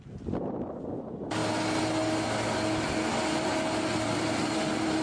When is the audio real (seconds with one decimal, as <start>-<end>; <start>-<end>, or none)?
0.0-5.0